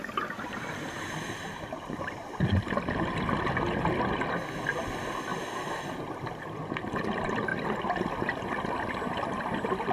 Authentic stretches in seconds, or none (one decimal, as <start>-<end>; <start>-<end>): 0.0-9.9